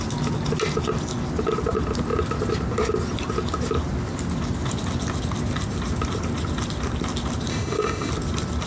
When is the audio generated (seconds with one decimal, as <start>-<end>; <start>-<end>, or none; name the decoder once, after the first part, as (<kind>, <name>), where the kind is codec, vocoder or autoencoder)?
7.5-8.1 (autoencoder, DAC-VAE)